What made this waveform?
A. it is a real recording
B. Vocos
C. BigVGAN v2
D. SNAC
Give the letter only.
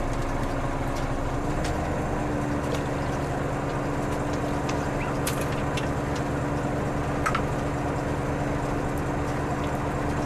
A